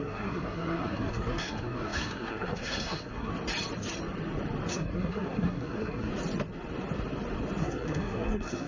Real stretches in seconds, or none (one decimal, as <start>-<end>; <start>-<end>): 3.3-4.7; 6.1-7.6